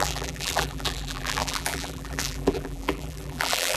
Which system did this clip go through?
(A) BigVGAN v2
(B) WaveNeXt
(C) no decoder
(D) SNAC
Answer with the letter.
A